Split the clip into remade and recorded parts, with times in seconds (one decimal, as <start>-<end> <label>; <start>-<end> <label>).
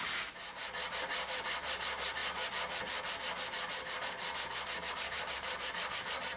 0.0-2.2 remade; 2.2-4.9 recorded; 4.9-6.4 remade